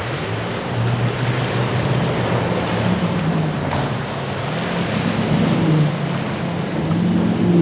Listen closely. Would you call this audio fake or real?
real